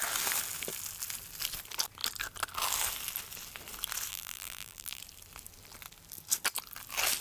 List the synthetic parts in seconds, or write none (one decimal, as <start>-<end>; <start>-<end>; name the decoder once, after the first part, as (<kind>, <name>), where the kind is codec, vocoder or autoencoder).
4.1-5.0 (vocoder, BigVGAN v2)